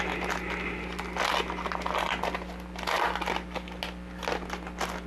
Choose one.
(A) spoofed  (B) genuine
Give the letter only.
B